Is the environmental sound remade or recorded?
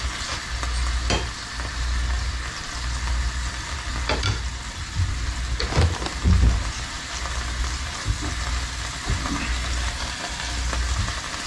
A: recorded